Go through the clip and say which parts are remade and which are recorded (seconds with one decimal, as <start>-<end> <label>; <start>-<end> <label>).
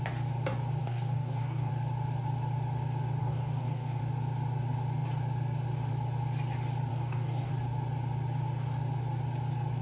0.0-0.8 recorded; 0.8-1.7 remade; 1.7-3.2 recorded; 3.2-4.0 remade; 4.0-6.9 recorded; 6.9-7.5 remade; 7.5-9.8 recorded